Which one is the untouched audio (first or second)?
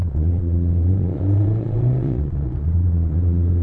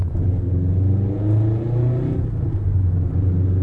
second